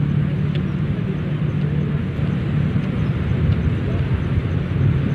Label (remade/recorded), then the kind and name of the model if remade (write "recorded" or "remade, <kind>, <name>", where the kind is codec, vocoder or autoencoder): recorded